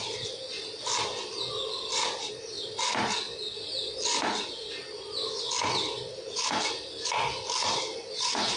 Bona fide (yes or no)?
yes